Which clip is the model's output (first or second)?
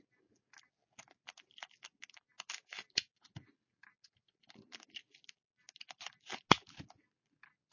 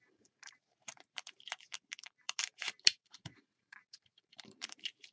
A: second